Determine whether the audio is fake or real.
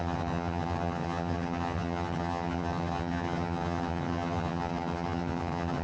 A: fake